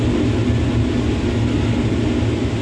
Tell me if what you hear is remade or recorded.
recorded